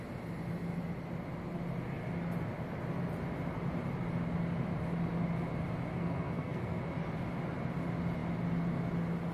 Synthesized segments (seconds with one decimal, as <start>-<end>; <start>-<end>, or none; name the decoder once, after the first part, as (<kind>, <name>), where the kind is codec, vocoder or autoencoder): 5.9-6.8 (codec, SNAC)